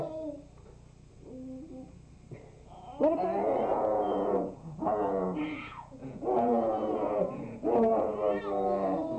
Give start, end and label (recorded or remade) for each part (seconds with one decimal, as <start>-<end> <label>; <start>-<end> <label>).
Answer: 0.0-3.7 recorded; 3.7-8.4 remade; 8.4-9.2 recorded